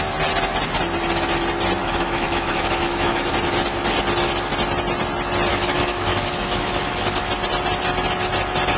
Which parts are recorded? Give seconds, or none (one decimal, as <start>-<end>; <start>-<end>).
0.0-1.8; 3.3-5.5; 7.3-8.8